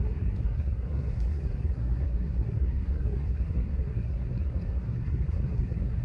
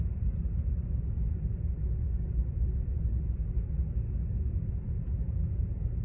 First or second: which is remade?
first